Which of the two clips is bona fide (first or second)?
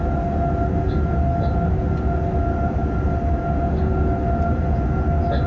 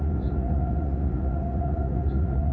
first